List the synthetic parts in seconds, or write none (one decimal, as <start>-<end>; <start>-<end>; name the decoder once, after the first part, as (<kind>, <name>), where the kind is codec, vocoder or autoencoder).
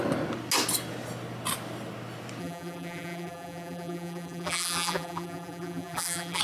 2.4-6.4 (vocoder, BigVGAN v2)